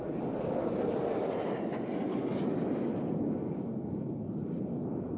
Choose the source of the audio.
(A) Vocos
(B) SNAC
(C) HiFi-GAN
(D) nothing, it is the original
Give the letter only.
D